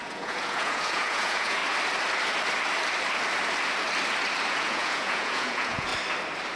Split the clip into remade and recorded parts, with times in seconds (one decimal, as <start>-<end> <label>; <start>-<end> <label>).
0.0-1.6 remade; 1.6-4.5 recorded; 4.5-5.9 remade; 5.9-6.6 recorded